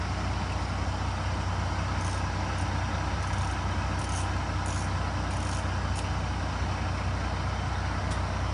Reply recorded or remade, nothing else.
recorded